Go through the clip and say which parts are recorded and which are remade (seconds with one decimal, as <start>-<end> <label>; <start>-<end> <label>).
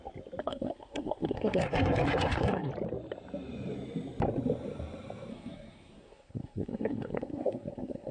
0.0-0.4 recorded; 0.4-2.7 remade; 2.7-5.3 recorded; 5.3-8.1 remade